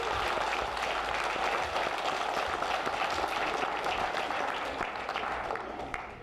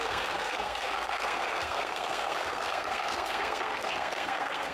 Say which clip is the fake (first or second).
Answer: second